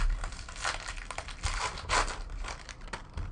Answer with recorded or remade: recorded